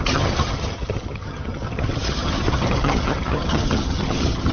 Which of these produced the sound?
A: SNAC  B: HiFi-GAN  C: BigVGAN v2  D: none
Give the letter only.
B